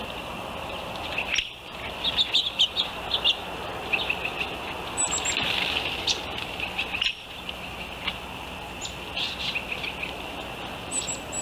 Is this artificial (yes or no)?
no